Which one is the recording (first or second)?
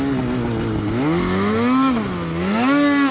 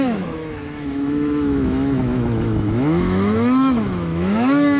first